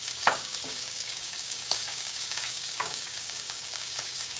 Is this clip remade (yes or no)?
yes